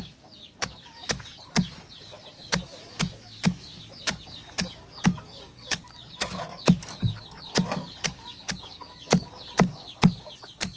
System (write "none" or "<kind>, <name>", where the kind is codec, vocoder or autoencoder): codec, DAC